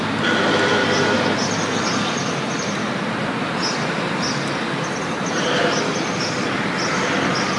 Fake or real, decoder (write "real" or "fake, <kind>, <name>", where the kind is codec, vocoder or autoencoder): real